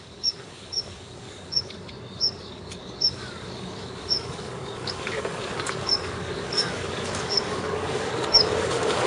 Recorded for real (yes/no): no